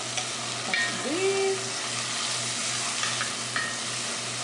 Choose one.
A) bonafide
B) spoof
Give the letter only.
A